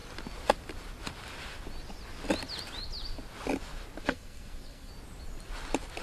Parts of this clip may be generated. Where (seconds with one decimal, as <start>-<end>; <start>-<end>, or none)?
4.0-4.9